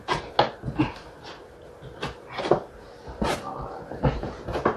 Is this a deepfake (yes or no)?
no